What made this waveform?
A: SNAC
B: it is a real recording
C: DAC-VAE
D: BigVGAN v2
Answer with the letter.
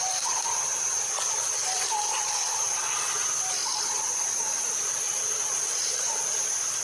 B